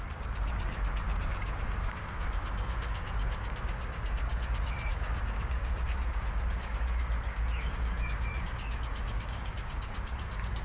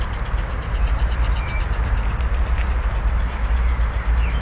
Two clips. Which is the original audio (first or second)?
second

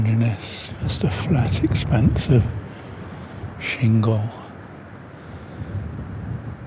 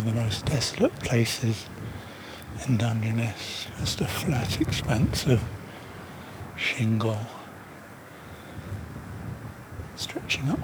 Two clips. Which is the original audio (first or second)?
first